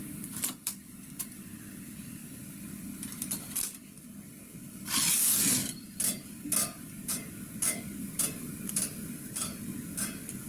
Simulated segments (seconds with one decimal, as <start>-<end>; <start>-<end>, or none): 0.0-1.5; 8.0-9.3